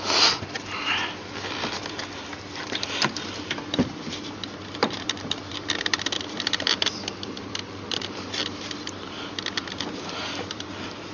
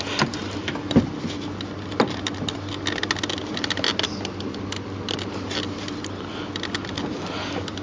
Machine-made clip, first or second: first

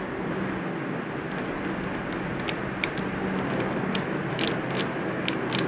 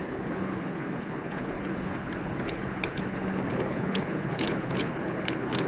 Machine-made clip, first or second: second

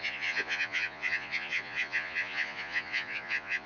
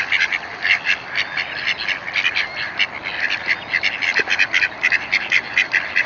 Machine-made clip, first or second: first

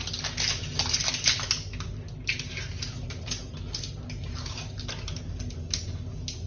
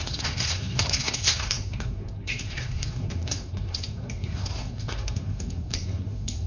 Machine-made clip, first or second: second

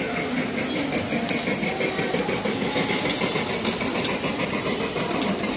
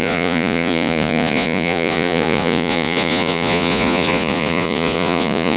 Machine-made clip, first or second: second